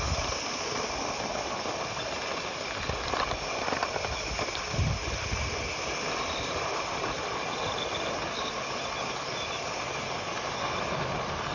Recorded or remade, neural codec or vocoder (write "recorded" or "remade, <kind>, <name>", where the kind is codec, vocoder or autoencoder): recorded